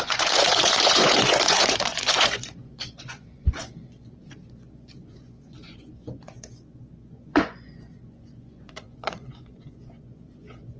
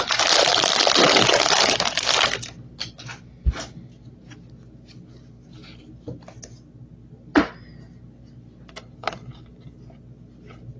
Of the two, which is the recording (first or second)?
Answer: second